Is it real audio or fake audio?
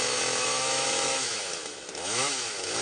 fake